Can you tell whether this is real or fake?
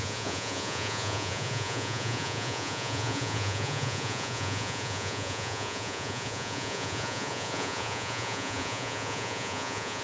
fake